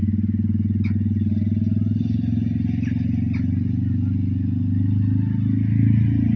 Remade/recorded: recorded